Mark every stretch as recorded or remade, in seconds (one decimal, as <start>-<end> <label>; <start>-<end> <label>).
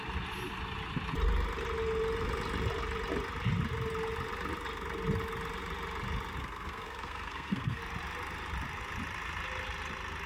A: 0.0-6.4 recorded; 6.4-7.8 remade; 7.8-10.3 recorded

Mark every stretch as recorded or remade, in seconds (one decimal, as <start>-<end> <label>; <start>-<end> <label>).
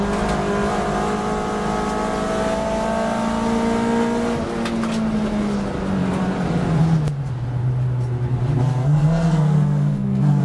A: 0.0-8.8 recorded; 8.8-10.4 remade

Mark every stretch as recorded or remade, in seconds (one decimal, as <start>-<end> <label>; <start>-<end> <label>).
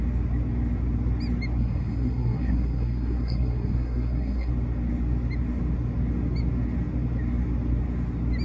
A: 0.0-1.6 recorded; 1.6-4.5 remade; 4.5-8.4 recorded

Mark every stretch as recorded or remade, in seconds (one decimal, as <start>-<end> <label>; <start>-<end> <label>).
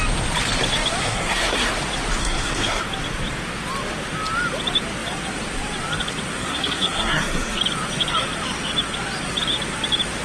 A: 0.0-1.0 recorded; 1.0-1.7 remade; 1.7-2.2 recorded; 2.2-2.8 remade; 2.8-6.4 recorded; 6.4-7.6 remade; 7.6-10.2 recorded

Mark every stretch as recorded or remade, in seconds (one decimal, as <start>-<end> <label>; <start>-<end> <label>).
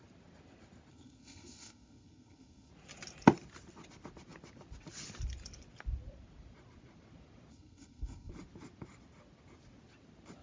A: 0.0-0.9 recorded; 0.9-2.7 remade; 2.7-7.5 recorded; 7.5-8.3 remade; 8.3-10.4 recorded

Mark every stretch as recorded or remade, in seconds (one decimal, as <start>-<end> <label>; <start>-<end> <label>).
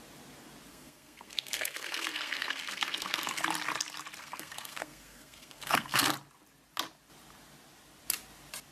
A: 0.0-0.7 recorded; 0.7-3.4 remade; 3.4-4.2 recorded; 4.2-6.1 remade; 6.1-8.7 recorded